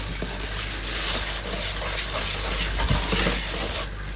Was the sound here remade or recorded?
recorded